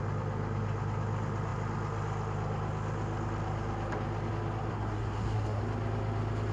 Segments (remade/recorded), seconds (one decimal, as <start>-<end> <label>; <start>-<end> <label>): 0.0-4.7 recorded; 4.7-5.6 remade; 5.6-6.5 recorded